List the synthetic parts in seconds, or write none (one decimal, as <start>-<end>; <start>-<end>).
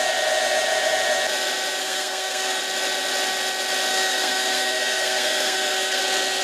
1.8-2.6; 3.9-6.0